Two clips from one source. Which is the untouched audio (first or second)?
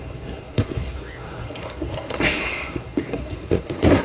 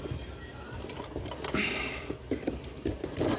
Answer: second